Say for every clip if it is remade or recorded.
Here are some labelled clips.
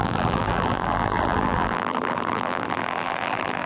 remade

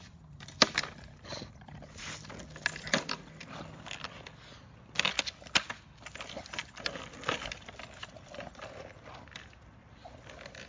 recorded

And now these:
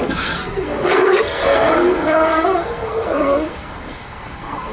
remade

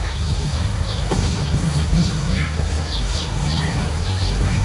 remade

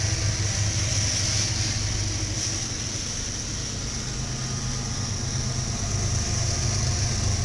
recorded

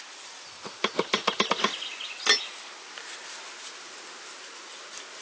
recorded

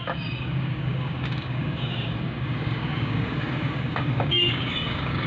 remade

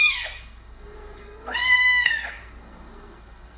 remade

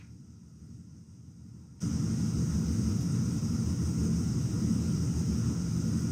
remade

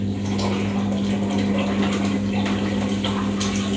recorded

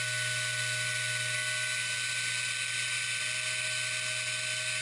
recorded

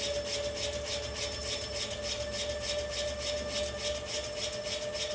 recorded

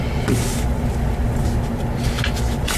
recorded